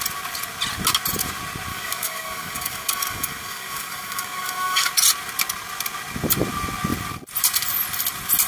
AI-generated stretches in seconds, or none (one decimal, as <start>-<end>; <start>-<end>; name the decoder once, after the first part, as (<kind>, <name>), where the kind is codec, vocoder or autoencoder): 1.7-4.9 (codec, DAC)